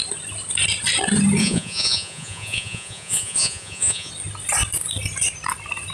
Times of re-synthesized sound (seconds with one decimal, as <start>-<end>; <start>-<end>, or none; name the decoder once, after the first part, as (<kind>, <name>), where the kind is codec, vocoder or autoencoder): 1.4-4.1 (vocoder, Vocos)